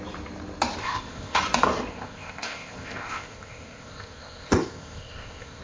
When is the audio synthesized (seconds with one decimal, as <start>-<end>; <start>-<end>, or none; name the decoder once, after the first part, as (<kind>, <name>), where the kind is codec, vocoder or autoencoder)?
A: 0.8-1.4 (codec, ZipCodec); 1.9-5.6